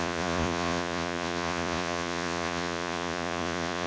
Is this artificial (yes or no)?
yes